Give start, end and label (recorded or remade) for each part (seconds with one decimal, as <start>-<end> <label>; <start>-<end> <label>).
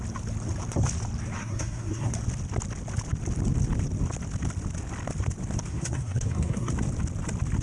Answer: 0.0-1.4 recorded; 1.4-2.1 remade; 2.1-5.7 recorded; 5.7-6.7 remade; 6.7-7.6 recorded